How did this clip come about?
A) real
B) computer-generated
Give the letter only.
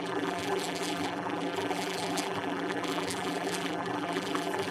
B